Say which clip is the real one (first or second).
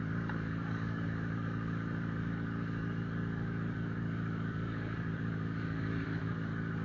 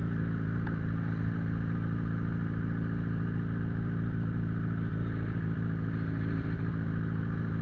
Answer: second